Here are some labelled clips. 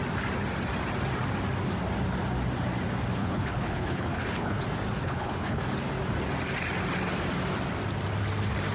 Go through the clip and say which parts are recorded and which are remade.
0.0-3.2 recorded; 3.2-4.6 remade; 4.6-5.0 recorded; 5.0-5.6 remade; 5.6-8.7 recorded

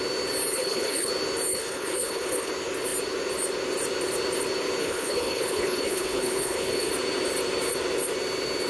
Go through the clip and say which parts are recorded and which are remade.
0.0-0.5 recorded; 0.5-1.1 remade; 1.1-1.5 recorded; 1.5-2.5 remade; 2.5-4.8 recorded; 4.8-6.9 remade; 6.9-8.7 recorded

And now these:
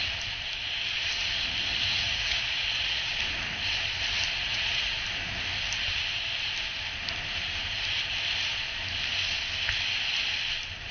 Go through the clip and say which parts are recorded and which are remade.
0.0-1.7 recorded; 1.7-3.1 remade; 3.1-4.4 recorded; 4.4-5.0 remade; 5.0-10.9 recorded